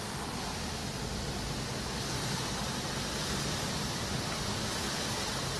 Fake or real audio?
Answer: real